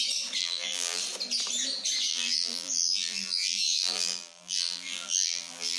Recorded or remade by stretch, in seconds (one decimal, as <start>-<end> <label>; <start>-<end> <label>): 0.0-0.4 recorded; 0.4-1.0 remade; 1.0-2.1 recorded; 2.1-5.8 remade